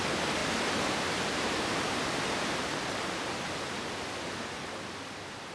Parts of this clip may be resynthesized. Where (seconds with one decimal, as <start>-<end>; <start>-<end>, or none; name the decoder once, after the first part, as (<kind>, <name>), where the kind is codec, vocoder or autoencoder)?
none